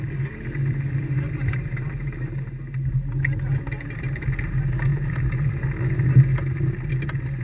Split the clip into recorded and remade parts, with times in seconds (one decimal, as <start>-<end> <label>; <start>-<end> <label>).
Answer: 0.0-0.6 recorded; 0.6-2.5 remade; 2.5-4.9 recorded; 4.9-5.5 remade; 5.5-6.3 recorded; 6.3-6.9 remade; 6.9-7.4 recorded